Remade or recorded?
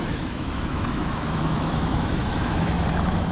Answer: remade